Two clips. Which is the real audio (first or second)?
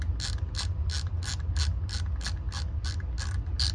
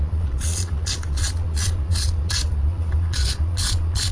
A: first